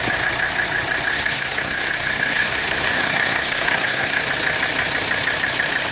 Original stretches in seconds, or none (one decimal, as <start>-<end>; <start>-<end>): 0.0-1.1; 4.2-5.9